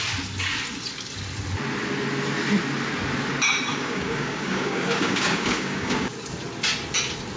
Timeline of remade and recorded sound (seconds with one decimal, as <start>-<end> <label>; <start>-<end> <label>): 0.0-3.7 recorded; 3.7-6.1 remade; 6.1-7.4 recorded